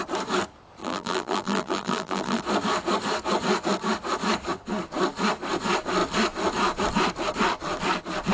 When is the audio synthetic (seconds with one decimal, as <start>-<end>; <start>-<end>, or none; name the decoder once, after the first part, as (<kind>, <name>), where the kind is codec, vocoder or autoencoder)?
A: 0.8-2.4 (vocoder, BigVGAN v2)

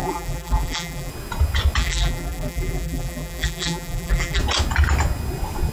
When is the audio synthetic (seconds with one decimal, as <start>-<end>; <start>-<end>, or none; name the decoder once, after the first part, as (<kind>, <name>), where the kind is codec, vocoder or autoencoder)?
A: 0.0-1.1 (vocoder, BigVGAN v2); 1.8-4.4

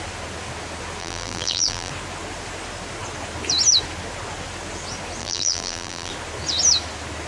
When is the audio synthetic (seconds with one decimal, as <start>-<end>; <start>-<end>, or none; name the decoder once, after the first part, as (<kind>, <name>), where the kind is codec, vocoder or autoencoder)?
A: 1.0-1.9 (vocoder, BigVGAN v2); 5.2-6.1

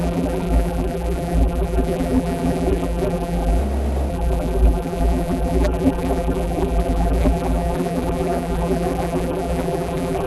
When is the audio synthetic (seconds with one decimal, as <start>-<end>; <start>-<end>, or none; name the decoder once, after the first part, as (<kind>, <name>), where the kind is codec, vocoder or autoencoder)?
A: 0.0-3.6 (vocoder, BigVGAN v2); 4.1-10.3

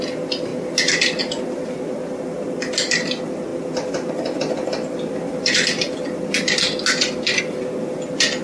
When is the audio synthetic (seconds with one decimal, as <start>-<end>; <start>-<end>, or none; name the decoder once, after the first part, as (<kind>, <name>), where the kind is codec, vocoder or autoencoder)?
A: none